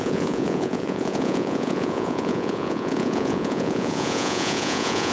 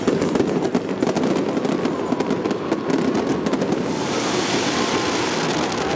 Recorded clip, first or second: second